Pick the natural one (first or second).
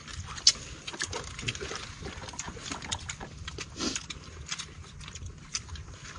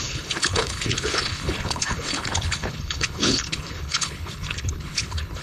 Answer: first